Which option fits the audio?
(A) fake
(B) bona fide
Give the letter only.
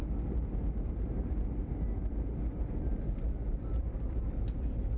B